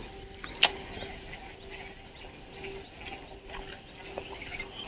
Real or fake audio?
real